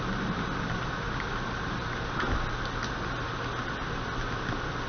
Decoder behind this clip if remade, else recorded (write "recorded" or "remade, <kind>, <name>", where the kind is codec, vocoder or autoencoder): recorded